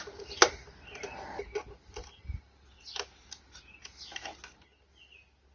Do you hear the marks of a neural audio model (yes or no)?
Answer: no